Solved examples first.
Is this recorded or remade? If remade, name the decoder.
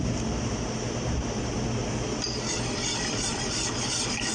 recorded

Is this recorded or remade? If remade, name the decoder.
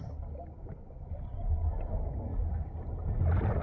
recorded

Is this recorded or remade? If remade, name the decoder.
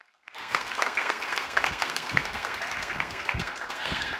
remade, codec, SNAC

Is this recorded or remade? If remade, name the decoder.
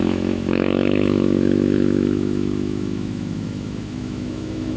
remade, autoencoder, DAC-VAE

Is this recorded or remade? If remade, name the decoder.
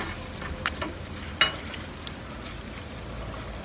recorded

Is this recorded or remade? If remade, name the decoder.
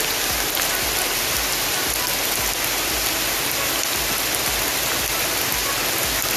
recorded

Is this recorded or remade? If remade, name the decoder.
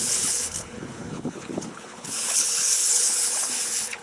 remade, codec, HILCodec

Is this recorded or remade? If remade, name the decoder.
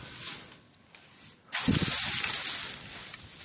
recorded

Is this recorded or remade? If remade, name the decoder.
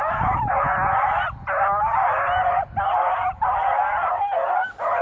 recorded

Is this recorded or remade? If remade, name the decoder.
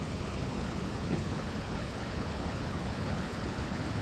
remade, codec, HILCodec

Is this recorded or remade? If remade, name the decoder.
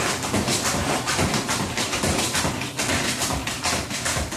remade, vocoder, BigVGAN v2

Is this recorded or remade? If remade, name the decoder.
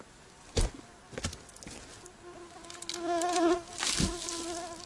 recorded